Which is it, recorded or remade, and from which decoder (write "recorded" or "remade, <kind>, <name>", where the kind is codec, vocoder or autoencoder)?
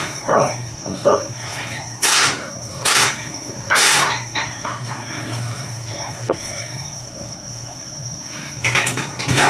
remade, codec, SNAC